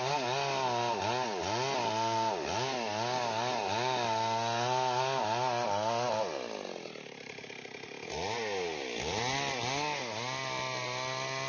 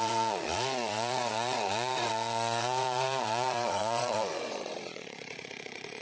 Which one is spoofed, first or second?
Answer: second